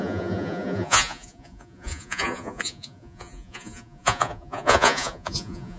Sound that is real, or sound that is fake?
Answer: fake